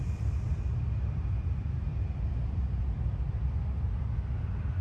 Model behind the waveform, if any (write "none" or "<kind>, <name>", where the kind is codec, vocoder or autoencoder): none